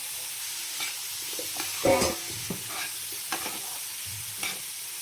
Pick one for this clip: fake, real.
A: real